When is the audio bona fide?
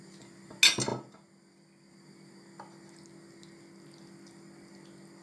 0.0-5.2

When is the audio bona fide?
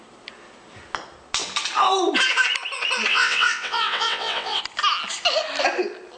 0.0-3.1; 4.6-6.2